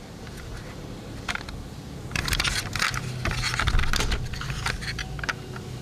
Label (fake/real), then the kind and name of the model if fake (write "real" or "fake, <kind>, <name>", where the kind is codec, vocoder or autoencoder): real